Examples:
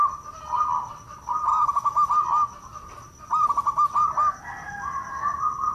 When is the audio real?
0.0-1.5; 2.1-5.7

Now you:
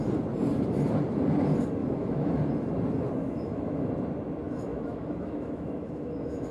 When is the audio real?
0.0-1.8; 2.4-3.2; 3.9-4.7

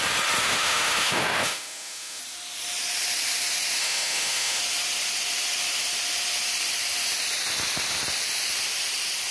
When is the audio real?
0.0-0.4; 2.2-3.8; 4.6-9.3

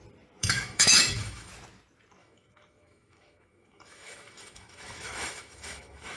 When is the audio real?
0.0-0.4; 1.5-2.2

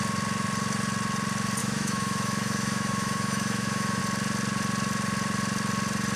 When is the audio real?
0.0-1.6; 4.0-6.2

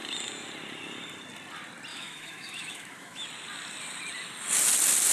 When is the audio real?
0.0-1.9; 3.3-5.1

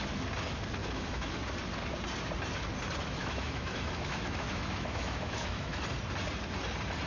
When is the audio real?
0.0-0.8; 1.3-3.2; 5.8-7.1